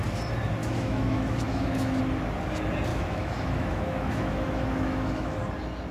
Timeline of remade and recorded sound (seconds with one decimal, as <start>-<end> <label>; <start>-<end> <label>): 0.0-0.6 recorded; 0.6-2.0 remade; 2.0-2.9 recorded; 2.9-5.4 remade; 5.4-5.9 recorded